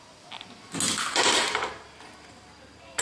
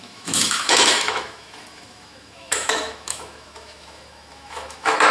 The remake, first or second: second